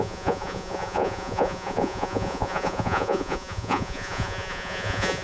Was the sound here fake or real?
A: fake